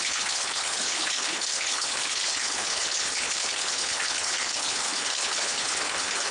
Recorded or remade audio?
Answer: remade